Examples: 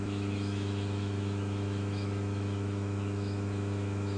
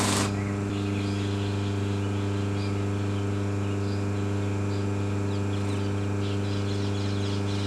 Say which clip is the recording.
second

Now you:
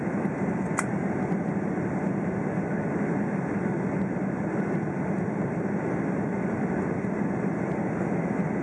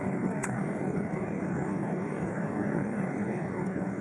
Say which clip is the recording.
first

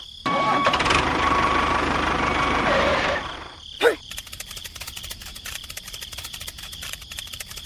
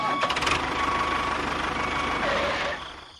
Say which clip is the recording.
second